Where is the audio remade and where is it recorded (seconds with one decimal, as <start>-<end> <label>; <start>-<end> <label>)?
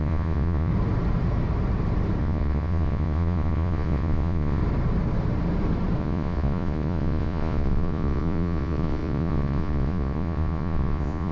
0.0-0.7 remade; 0.7-2.2 recorded; 2.2-4.6 remade; 4.6-6.0 recorded; 6.0-11.3 remade